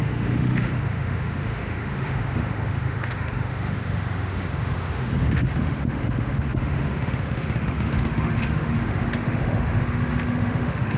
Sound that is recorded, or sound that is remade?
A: remade